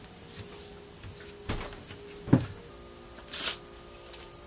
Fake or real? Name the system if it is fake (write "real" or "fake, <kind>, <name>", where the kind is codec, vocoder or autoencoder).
real